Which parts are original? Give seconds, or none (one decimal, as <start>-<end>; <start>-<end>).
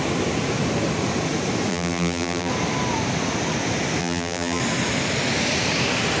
0.0-1.7; 2.5-4.0; 4.6-6.2